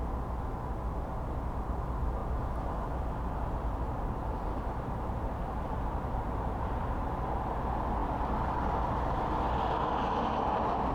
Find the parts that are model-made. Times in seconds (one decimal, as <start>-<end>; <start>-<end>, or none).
2.2-7.4

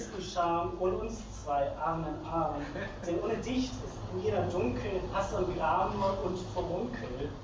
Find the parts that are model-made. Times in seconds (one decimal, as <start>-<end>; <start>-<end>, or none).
none

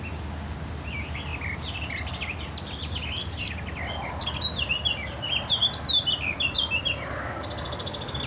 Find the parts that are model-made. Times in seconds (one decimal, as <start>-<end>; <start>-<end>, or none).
none

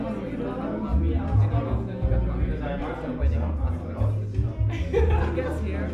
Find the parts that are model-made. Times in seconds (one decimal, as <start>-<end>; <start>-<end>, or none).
none